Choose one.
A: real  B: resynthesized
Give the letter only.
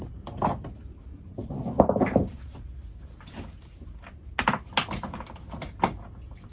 A